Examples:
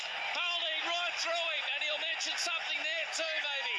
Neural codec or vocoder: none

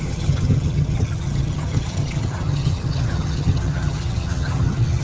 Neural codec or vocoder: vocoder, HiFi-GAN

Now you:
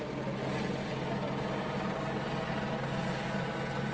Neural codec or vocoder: none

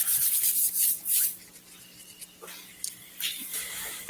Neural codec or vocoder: none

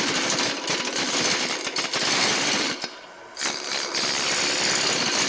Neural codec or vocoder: none